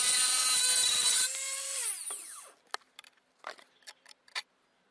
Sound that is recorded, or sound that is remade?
recorded